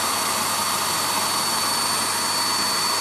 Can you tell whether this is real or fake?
real